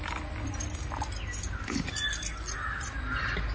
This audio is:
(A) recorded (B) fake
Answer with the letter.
A